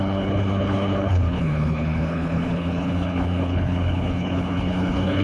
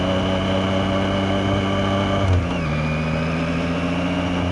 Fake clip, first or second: first